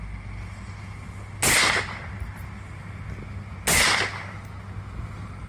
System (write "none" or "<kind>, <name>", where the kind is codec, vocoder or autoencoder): none